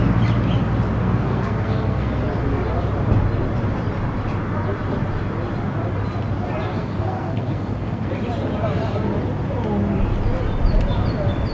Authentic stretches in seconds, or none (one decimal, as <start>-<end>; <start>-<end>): 0.0-1.0; 2.3-6.7; 8.1-11.5